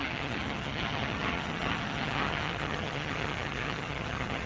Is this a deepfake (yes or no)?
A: yes